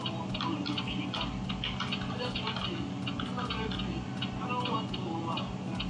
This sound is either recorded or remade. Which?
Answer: recorded